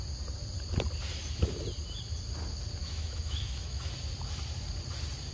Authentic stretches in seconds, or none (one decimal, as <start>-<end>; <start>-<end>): 0.0-2.8; 3.9-5.3